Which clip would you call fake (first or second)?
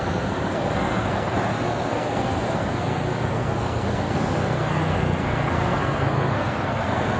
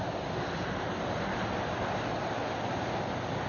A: first